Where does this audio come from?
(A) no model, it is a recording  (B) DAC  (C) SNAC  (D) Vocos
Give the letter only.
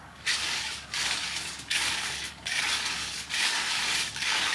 B